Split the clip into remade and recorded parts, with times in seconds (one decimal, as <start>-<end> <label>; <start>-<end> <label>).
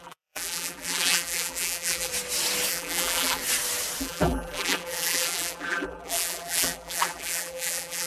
0.0-2.1 remade; 2.1-2.7 recorded; 2.7-3.4 remade; 3.4-4.0 recorded; 4.0-8.1 remade